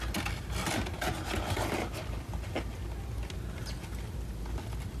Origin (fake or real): real